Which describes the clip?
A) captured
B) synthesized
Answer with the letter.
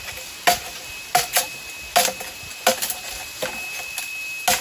A